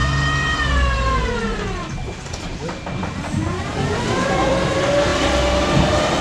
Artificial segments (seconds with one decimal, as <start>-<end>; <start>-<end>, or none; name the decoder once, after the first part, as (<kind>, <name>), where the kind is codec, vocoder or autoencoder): 0.0-0.7 (vocoder, BigVGAN v2); 3.7-4.5